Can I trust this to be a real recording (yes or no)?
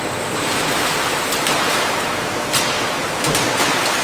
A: yes